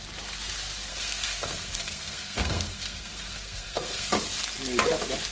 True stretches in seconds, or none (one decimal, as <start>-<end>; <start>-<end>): 0.0-0.9; 4.1-5.3